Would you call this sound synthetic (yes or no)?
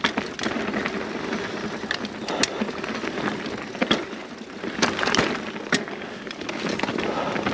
no